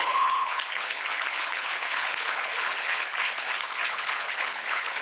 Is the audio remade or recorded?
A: remade